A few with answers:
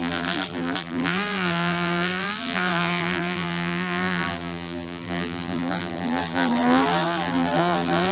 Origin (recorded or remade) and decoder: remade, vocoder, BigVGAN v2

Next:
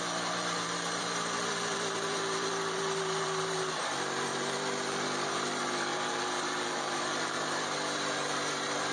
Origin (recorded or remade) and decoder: remade, vocoder, BigVGAN v2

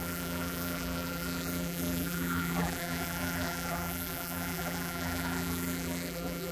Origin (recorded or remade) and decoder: remade, vocoder, BigVGAN v2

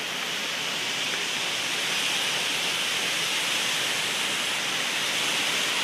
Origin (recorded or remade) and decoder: recorded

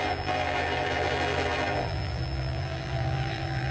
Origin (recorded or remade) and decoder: remade, vocoder, BigVGAN v2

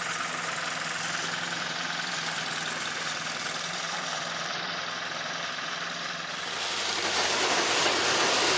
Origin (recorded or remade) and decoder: remade, vocoder, BigVGAN v2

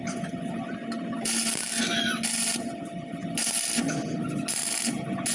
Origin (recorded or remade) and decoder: recorded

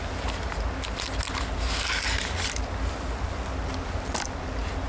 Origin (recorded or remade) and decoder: recorded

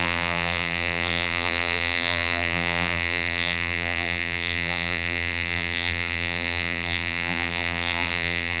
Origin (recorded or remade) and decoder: remade, vocoder, BigVGAN v2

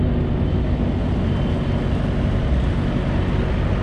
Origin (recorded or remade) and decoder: recorded